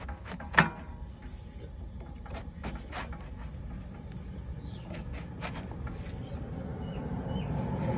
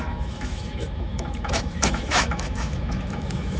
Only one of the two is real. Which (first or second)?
first